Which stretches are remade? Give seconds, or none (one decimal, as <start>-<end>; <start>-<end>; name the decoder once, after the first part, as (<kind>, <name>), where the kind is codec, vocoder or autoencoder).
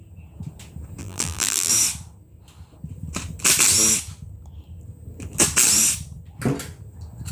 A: 1.0-1.7 (vocoder, BigVGAN v2)